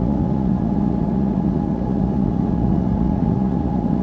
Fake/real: fake